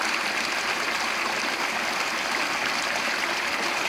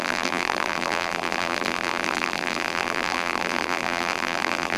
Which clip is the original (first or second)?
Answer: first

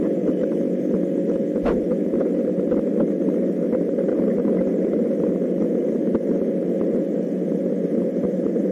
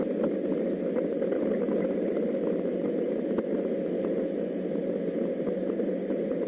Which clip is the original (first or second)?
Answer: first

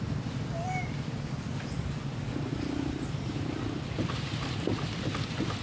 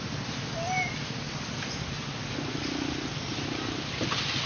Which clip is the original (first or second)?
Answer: second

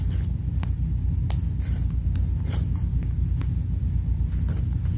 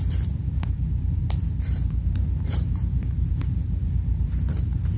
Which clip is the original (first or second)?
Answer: first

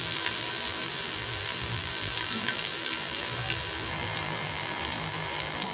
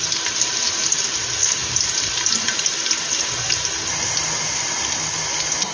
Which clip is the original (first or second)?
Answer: second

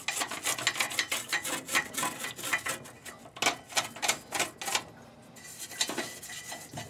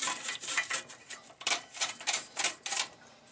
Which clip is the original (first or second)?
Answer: first